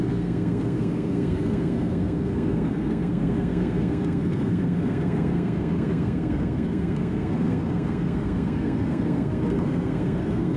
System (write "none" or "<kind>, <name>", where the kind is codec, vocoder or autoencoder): codec, SNAC